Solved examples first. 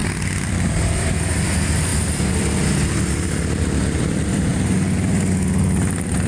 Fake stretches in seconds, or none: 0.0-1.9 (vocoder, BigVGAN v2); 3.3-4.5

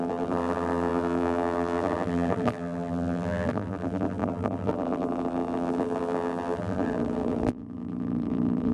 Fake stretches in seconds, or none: 0.0-8.7 (vocoder, BigVGAN v2)

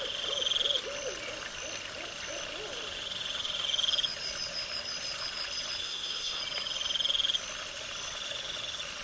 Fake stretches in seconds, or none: 5.8-6.4 (codec, SNAC)